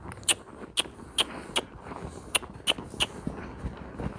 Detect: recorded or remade recorded